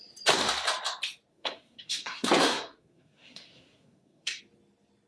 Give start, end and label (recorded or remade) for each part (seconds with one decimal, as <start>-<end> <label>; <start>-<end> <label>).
0.0-1.3 recorded; 1.3-4.4 remade; 4.4-5.1 recorded